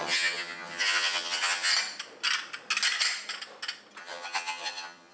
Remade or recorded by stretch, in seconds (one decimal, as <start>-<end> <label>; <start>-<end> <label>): 0.0-1.7 remade; 1.7-4.0 recorded; 4.0-5.1 remade

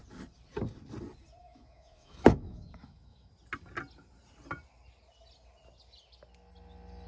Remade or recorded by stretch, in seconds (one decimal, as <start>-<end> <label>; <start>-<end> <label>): 0.0-1.4 recorded; 1.4-3.3 remade; 3.3-7.1 recorded

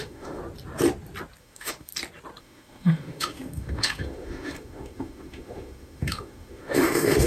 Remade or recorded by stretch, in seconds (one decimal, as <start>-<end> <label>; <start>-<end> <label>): 0.0-0.4 remade; 0.4-1.4 recorded; 1.4-1.9 remade; 1.9-2.4 recorded; 2.4-7.3 remade

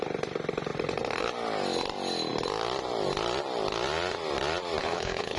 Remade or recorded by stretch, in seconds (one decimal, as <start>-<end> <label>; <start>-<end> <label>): 0.0-4.8 recorded; 4.8-5.4 remade

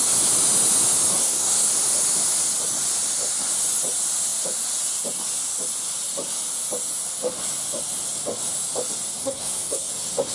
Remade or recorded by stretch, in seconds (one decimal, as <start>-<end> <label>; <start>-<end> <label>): 0.0-1.1 recorded; 1.1-1.7 remade; 1.7-9.2 recorded; 9.2-9.9 remade; 9.9-10.3 recorded

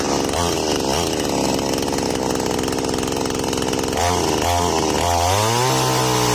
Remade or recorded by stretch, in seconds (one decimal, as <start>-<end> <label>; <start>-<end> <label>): 0.0-6.3 recorded

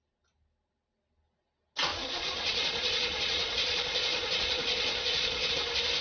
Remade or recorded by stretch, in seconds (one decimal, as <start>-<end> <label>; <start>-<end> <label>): 0.0-1.9 recorded; 1.9-5.5 remade; 5.5-6.0 recorded

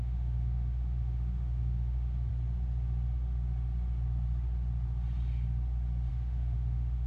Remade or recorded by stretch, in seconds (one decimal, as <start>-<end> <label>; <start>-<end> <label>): 0.0-2.3 remade; 2.3-6.1 recorded; 6.1-7.1 remade